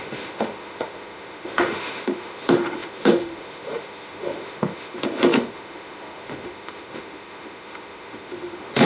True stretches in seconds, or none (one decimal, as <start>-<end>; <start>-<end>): none